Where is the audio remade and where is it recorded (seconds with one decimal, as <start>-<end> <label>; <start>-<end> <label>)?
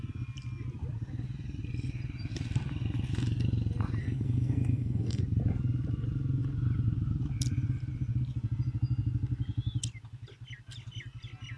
0.0-4.0 recorded; 4.0-5.2 remade; 5.2-11.6 recorded